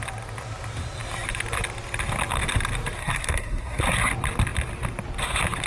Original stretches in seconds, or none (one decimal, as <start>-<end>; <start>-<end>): 0.0-3.0; 3.8-5.7